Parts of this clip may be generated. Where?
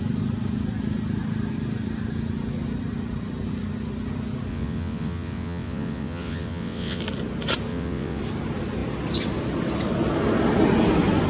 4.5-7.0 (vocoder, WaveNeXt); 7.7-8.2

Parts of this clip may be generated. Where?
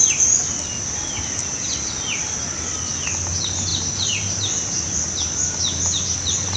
3.7-5.6 (vocoder, BigVGAN v2)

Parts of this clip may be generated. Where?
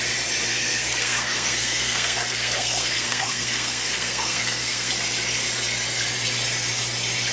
0.5-4.9 (codec, SNAC)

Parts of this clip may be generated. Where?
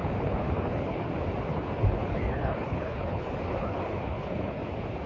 0.0-1.1 (codec, HILCodec); 1.5-4.6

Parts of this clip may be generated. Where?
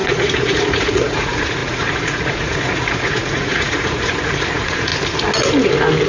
0.0-4.9 (vocoder, Vocos)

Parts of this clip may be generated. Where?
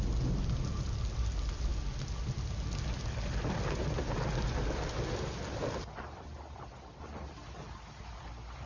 none